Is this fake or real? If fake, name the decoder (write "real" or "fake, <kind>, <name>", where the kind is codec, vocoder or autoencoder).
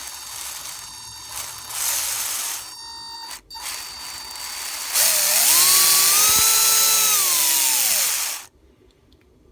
real